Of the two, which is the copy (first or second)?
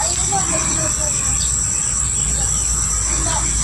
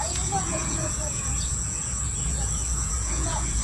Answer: second